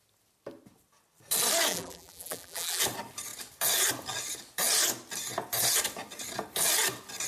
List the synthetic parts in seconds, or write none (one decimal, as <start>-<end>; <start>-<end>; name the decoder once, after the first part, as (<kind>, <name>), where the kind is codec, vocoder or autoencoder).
1.7-2.8 (vocoder, BigVGAN v2)